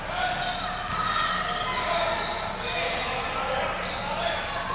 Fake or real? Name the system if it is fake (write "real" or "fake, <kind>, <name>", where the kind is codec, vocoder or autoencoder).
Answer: real